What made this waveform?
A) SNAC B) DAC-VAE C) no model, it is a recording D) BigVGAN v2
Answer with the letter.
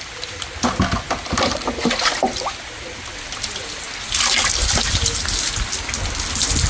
C